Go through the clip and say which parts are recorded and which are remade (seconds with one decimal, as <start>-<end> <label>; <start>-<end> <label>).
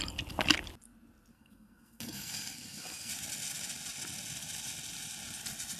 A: 0.0-1.3 recorded; 1.3-3.1 remade; 3.1-5.8 recorded